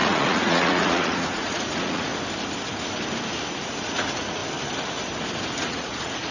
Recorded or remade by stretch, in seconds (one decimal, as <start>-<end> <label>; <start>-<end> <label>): 0.0-2.1 remade; 2.1-3.6 recorded; 3.6-4.4 remade; 4.4-5.6 recorded; 5.6-6.3 remade

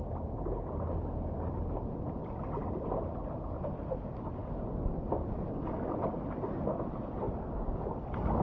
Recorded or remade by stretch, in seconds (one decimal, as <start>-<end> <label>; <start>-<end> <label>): 0.0-8.4 recorded

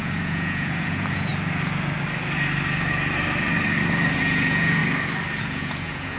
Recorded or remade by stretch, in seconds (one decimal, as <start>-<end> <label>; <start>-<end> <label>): 0.0-1.3 remade; 1.3-4.2 recorded; 4.2-4.8 remade; 4.8-5.4 recorded; 5.4-6.2 remade